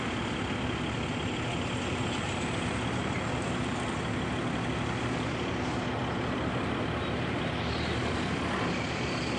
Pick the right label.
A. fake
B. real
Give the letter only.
B